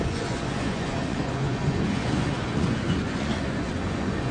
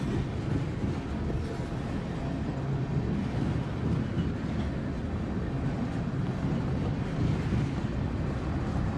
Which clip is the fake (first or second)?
first